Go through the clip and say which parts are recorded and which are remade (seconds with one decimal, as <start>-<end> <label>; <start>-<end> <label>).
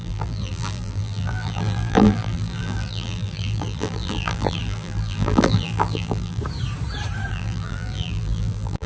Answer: 0.0-6.4 remade; 6.4-7.3 recorded; 7.3-8.9 remade